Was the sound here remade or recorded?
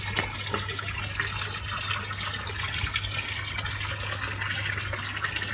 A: recorded